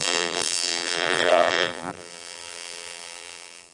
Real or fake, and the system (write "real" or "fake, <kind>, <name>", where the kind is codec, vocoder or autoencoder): fake, vocoder, BigVGAN v2